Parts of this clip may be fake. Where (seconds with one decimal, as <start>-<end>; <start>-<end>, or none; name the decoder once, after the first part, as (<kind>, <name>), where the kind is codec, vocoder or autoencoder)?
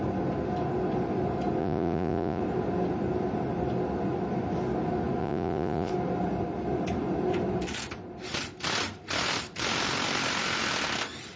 1.6-2.4 (vocoder, Vocos); 5.2-5.9